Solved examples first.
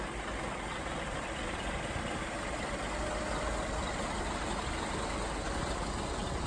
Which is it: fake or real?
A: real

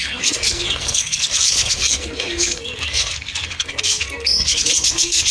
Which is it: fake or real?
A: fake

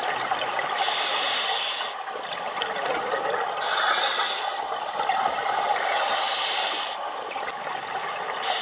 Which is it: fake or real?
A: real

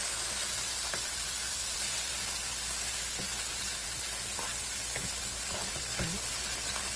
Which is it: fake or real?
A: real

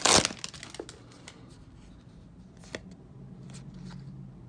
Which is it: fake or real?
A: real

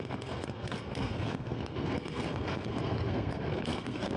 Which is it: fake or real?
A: fake